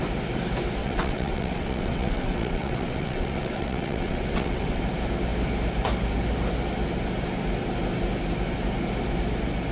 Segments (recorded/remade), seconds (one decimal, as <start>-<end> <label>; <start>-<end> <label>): 0.0-0.8 recorded; 0.8-4.8 remade; 4.8-9.7 recorded